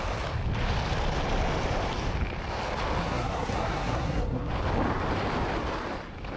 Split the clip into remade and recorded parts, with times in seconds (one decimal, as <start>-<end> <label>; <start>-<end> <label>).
0.0-3.0 recorded; 3.0-4.5 remade; 4.5-6.4 recorded